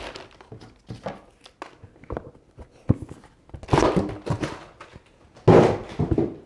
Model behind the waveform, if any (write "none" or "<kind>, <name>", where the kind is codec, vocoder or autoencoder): none